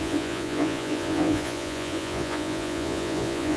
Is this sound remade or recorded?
remade